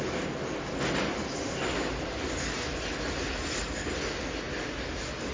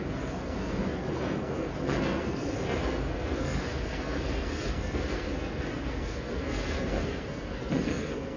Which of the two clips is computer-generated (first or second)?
second